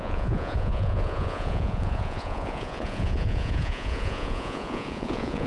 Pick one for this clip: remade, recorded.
remade